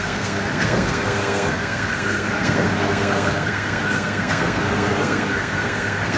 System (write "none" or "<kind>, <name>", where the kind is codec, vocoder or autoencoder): codec, SNAC